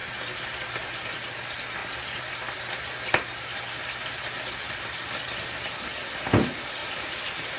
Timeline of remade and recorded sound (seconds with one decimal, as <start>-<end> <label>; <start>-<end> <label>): 0.0-6.8 recorded; 6.8-7.6 remade